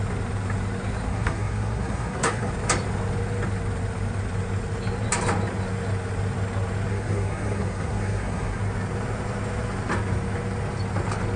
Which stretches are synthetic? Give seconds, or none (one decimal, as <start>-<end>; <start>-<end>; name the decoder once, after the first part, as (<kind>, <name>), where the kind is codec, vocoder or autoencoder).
1.1-2.5 (codec, SNAC); 6.9-8.6